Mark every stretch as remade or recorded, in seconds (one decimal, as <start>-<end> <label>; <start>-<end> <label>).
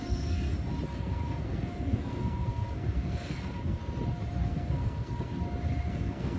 0.0-0.5 remade; 0.5-1.0 recorded; 1.0-3.8 remade; 3.8-4.5 recorded; 4.5-5.3 remade; 5.3-5.9 recorded; 5.9-6.4 remade